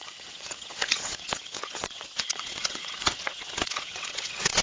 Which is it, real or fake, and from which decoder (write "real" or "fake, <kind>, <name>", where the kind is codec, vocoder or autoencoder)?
fake, vocoder, WaveNeXt